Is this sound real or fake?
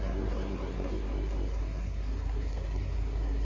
fake